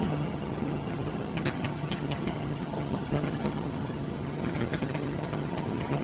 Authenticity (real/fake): fake